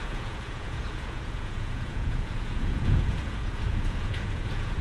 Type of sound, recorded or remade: remade